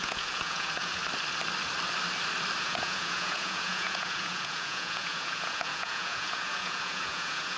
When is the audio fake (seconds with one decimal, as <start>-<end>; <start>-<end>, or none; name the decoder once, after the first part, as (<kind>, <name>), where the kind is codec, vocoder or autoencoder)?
0.0-1.0 (vocoder, Vocos); 2.6-7.6